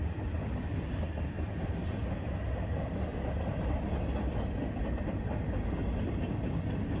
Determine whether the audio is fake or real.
real